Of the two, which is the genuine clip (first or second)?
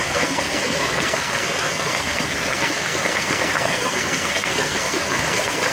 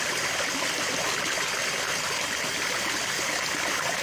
second